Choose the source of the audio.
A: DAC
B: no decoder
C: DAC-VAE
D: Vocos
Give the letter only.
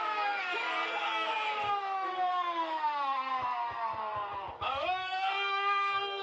A